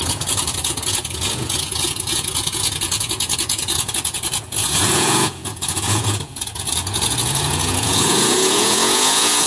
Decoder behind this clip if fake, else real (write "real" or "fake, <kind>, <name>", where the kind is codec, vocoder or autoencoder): fake, vocoder, Vocos